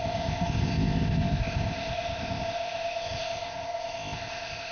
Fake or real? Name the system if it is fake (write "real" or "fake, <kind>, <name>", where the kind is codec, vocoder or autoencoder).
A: fake, codec, ZipCodec